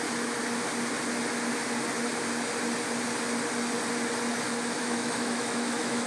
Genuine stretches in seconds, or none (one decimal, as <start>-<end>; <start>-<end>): 0.0-4.8